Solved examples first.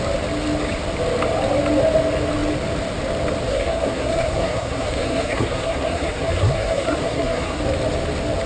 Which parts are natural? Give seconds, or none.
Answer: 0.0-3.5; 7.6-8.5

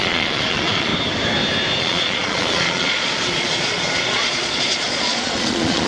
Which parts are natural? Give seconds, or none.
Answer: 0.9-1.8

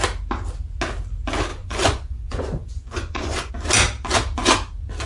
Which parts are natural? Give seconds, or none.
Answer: 0.0-1.5; 3.5-5.1

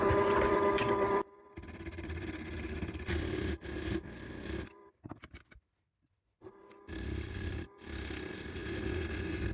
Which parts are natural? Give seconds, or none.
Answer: 8.6-9.5

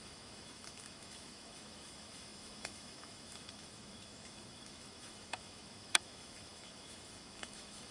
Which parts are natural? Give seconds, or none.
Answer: none

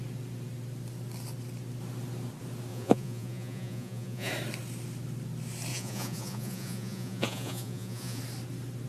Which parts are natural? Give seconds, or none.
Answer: 0.0-2.7; 4.3-5.7; 8.2-8.9

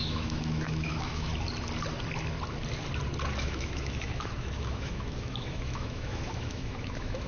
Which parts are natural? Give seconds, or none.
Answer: 1.3-3.4